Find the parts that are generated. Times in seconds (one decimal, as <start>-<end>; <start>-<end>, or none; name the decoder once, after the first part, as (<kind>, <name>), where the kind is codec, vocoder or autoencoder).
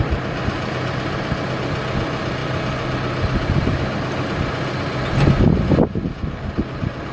none